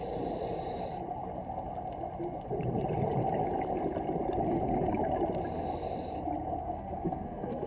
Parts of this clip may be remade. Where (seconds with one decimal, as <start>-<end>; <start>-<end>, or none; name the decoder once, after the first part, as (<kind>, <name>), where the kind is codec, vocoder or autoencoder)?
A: 6.6-7.7 (codec, SNAC)